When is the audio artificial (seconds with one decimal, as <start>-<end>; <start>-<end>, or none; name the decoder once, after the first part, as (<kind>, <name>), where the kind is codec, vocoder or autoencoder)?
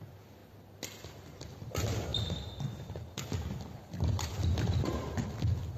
none